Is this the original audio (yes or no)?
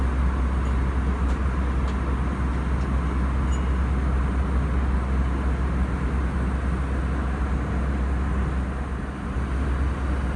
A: yes